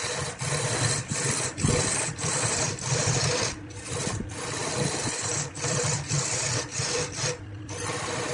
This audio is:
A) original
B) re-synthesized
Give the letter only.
B